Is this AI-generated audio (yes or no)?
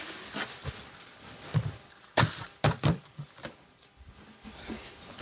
no